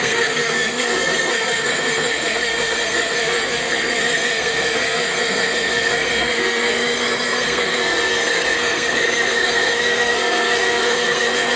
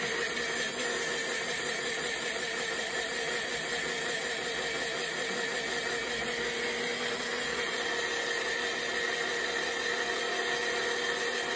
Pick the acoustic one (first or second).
second